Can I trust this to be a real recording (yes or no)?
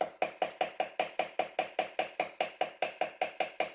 yes